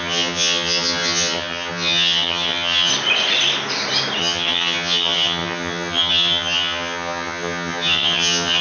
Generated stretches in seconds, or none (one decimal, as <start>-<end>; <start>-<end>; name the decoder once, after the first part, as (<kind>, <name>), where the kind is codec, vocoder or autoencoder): 0.0-2.9 (vocoder, HiFi-GAN); 4.2-8.6